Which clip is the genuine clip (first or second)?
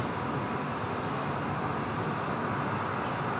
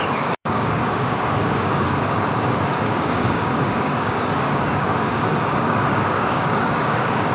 first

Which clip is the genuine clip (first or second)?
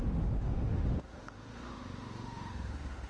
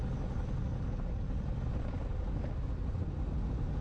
second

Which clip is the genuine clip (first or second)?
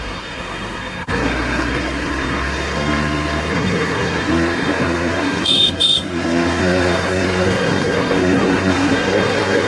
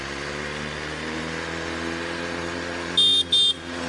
second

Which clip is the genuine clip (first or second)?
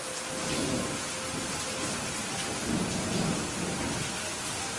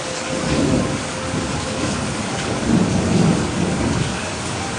first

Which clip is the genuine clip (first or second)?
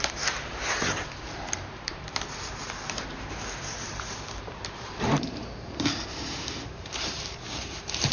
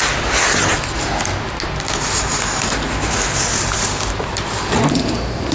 second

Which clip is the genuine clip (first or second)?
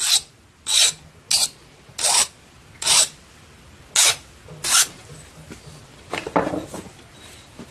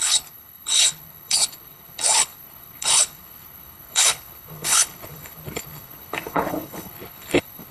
first